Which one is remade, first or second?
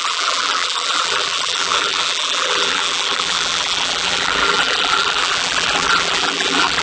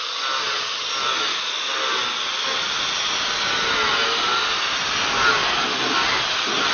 first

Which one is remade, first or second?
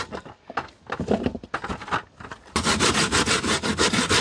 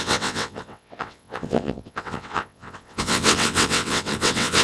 second